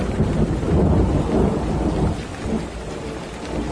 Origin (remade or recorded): recorded